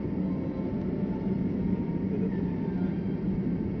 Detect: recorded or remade recorded